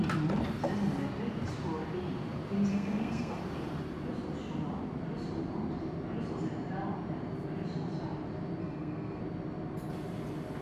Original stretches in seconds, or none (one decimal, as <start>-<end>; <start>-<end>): 0.0-2.7; 3.4-8.6; 9.2-10.6